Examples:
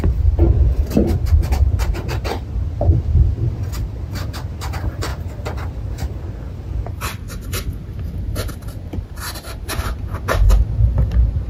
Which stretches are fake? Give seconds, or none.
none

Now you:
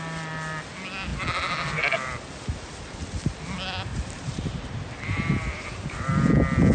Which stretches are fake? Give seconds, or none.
3.9-6.3

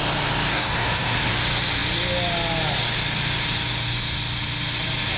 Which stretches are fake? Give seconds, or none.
0.5-1.3